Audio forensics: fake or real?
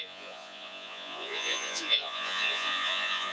fake